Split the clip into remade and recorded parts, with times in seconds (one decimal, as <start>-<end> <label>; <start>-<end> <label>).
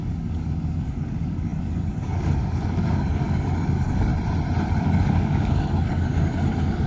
0.0-4.1 remade; 4.1-4.7 recorded; 4.7-6.9 remade